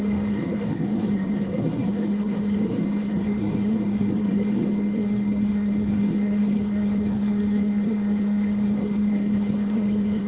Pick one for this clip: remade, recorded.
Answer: remade